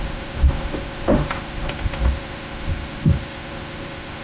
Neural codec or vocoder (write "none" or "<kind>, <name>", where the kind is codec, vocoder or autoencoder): autoencoder, DAC-VAE